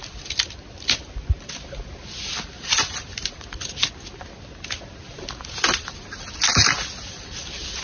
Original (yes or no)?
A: yes